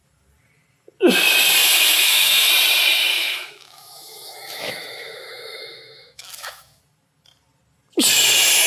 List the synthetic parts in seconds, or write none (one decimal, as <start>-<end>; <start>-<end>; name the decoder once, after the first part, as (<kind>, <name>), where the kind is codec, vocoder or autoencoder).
1.6-2.5 (autoencoder, DAC-VAE); 3.1-6.8